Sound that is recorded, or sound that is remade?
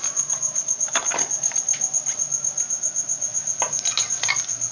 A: recorded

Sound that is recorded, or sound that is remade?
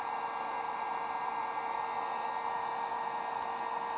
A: recorded